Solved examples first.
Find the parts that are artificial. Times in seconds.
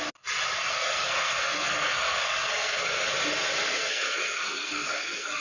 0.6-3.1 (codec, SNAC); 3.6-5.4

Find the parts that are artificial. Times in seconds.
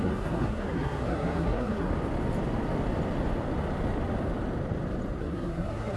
0.0-1.9 (codec, SNAC); 5.2-6.0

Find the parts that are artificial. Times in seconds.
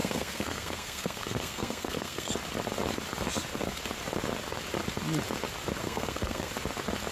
0.0-2.3 (codec, SNAC); 5.8-6.5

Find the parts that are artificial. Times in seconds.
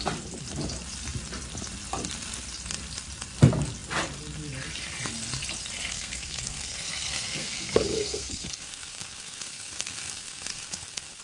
5.9-11.2 (codec, SNAC)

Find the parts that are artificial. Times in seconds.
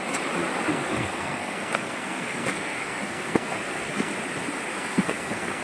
0.7-4.1 (codec, SNAC); 4.7-5.6